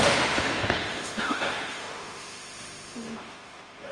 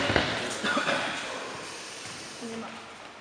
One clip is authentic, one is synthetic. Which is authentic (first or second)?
second